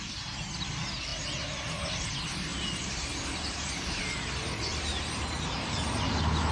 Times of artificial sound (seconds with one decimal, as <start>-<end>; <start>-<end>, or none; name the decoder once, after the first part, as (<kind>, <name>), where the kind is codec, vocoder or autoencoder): 2.5-4.0 (vocoder, BigVGAN v2)